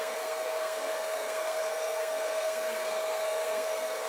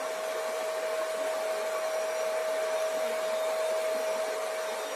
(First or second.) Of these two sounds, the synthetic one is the first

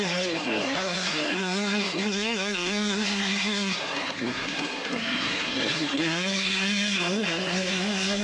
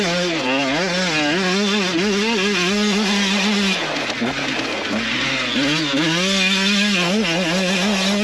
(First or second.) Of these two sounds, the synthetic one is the first